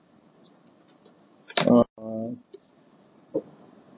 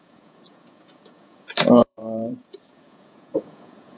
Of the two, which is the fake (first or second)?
second